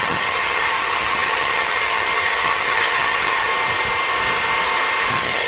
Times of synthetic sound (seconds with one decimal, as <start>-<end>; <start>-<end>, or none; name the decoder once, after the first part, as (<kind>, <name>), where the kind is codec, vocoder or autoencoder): 0.0-3.5 (vocoder, HiFi-GAN); 5.1-5.5